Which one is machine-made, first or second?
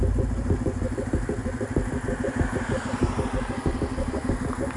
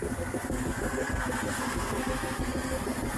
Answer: second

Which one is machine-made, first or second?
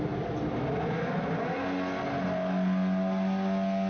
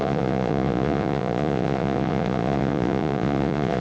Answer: second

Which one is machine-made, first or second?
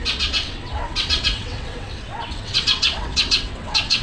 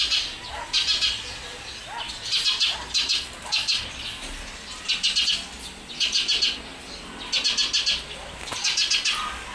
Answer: first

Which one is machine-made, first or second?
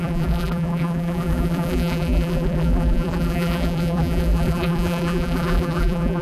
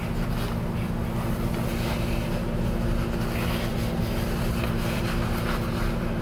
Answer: first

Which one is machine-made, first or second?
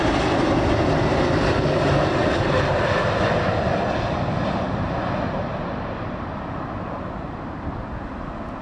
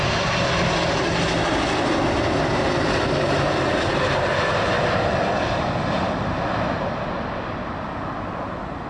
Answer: first